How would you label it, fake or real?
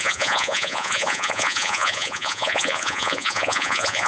fake